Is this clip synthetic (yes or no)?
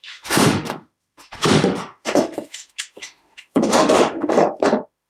yes